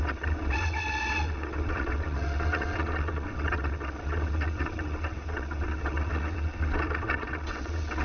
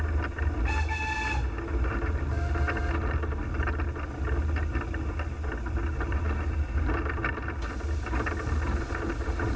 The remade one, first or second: first